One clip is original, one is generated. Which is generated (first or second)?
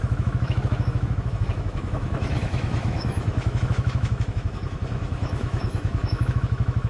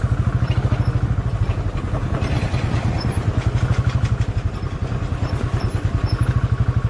first